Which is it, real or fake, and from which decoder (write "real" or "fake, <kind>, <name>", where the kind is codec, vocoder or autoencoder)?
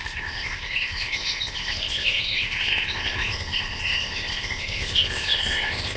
fake, codec, ZipCodec